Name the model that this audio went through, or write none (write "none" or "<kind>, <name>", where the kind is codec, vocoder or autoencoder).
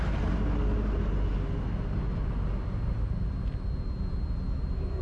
none